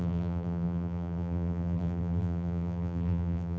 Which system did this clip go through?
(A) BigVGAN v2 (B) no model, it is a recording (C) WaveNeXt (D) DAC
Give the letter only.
A